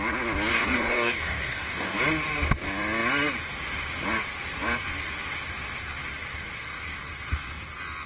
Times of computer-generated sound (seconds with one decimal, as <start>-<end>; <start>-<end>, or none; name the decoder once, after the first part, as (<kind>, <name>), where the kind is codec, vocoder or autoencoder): 0.5-2.0 (codec, DAC)